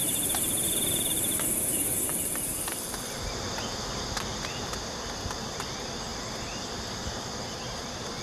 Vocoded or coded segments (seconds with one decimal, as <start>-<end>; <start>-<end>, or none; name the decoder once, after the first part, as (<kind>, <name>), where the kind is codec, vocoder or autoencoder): 0.0-2.9 (vocoder, BigVGAN v2)